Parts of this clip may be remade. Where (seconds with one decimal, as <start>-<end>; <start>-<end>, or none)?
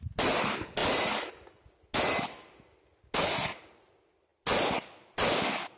none